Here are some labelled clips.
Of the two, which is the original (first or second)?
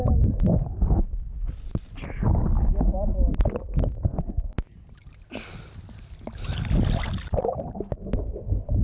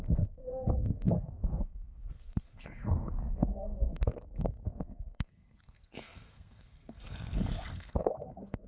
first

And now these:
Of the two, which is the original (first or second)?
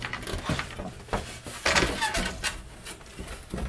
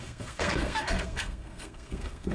first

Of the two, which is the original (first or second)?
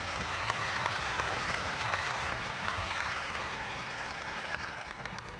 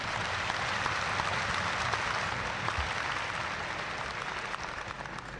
second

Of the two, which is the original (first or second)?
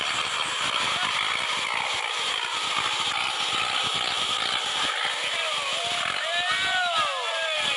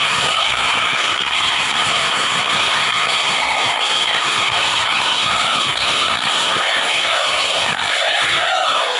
first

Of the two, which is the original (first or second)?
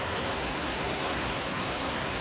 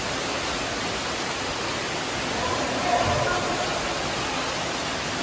second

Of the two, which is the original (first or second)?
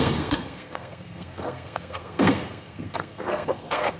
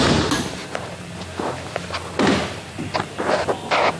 second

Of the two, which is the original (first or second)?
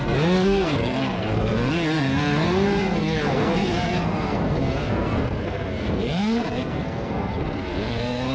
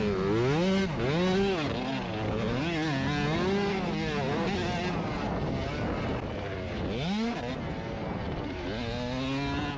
second